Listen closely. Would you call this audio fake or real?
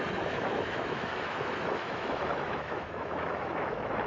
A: fake